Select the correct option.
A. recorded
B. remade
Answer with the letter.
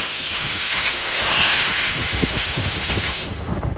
B